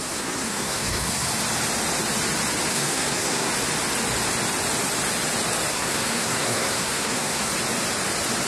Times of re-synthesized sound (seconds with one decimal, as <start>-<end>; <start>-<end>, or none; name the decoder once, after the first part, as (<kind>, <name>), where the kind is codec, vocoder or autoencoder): 0.0-1.3 (codec, SNAC); 2.7-3.5; 5.7-7.5